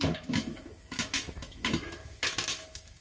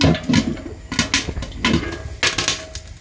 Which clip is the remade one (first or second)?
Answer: first